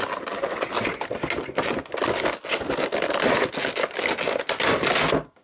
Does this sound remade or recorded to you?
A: recorded